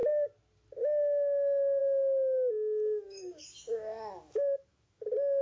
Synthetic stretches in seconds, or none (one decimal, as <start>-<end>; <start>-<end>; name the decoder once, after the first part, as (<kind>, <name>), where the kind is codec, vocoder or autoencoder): 1.8-5.0 (autoencoder, DAC-VAE)